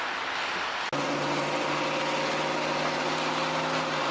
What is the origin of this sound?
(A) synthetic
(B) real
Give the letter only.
B